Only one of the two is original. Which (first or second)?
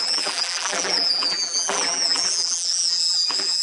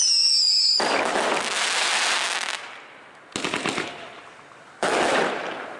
second